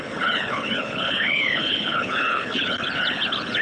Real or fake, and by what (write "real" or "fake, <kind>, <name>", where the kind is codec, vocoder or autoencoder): fake, codec, HILCodec